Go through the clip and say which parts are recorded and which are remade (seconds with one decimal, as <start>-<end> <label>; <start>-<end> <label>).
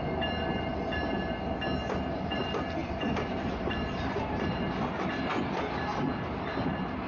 0.0-2.8 recorded; 2.8-5.2 remade; 5.2-7.1 recorded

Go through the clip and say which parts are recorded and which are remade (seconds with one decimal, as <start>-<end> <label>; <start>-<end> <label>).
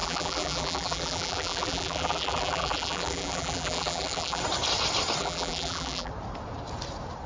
0.0-4.4 remade; 4.4-5.2 recorded; 5.2-6.1 remade; 6.1-7.3 recorded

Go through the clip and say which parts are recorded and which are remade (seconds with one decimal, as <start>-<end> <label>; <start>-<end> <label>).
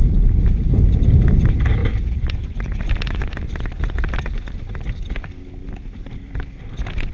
0.0-1.8 recorded; 1.8-3.4 remade; 3.4-5.6 recorded; 5.6-6.5 remade; 6.5-7.1 recorded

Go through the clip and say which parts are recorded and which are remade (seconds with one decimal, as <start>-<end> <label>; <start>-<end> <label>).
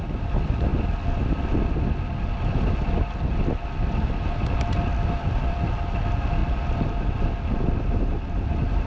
0.0-8.9 recorded